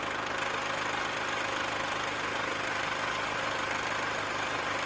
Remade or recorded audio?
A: recorded